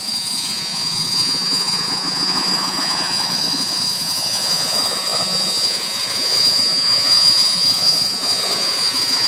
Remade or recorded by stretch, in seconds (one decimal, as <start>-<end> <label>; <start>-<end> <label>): 0.0-9.3 remade

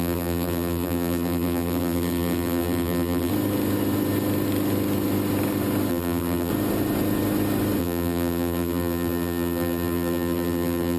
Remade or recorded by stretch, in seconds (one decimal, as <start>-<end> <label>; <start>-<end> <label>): 0.0-3.3 remade; 3.3-5.9 recorded; 5.9-6.5 remade; 6.5-7.8 recorded; 7.8-11.0 remade